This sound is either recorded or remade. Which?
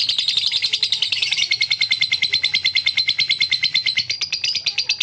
recorded